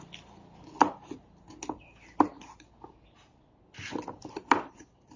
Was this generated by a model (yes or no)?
no